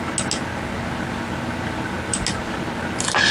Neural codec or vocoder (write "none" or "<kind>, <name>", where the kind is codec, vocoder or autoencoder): none